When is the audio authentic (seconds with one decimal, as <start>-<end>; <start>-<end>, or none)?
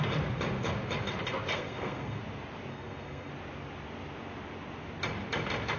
0.0-1.5; 2.2-2.7; 3.3-5.8